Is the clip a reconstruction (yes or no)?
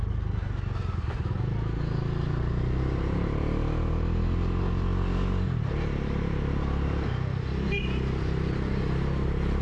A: no